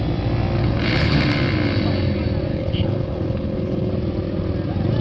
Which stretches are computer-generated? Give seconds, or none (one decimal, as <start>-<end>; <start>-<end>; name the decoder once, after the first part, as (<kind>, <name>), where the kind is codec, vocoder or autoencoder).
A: 0.6-1.2 (codec, HILCodec); 2.5-3.9